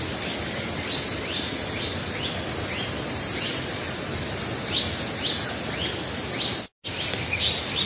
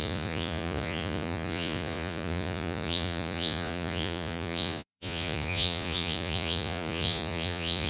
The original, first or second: first